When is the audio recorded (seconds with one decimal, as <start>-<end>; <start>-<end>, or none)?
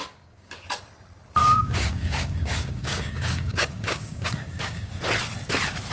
0.5-1.4; 4.9-5.9